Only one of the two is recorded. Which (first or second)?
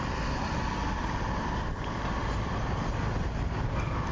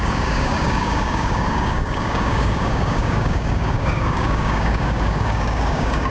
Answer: first